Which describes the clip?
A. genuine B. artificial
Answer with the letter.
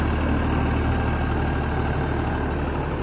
A